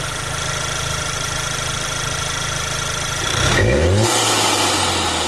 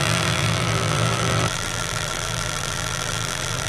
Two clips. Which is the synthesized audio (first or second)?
second